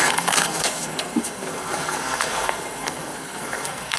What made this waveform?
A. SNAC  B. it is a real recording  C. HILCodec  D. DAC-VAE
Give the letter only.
A